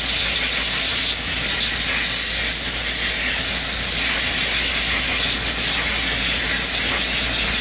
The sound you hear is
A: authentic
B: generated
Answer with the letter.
A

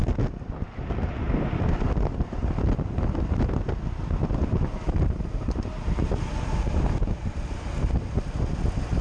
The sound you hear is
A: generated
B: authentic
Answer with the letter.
B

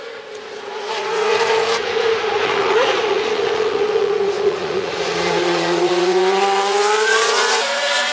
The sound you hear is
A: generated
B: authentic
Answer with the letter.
A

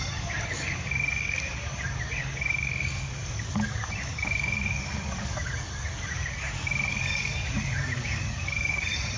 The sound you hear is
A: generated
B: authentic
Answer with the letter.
A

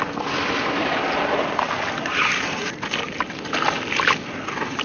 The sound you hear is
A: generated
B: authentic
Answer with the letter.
B